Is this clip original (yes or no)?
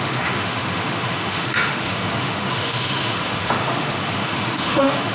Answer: no